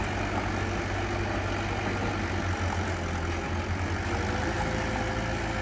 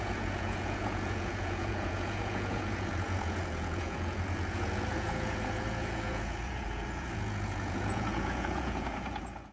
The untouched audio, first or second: first